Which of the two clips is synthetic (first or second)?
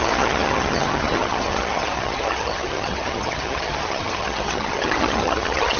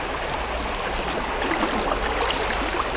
first